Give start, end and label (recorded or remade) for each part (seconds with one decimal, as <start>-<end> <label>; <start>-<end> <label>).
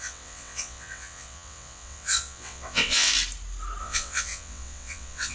0.0-3.1 remade; 3.1-3.8 recorded; 3.8-5.3 remade